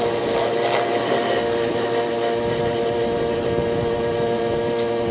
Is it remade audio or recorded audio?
recorded